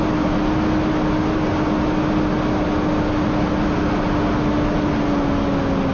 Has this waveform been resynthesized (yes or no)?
no